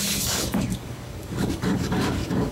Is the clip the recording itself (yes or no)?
no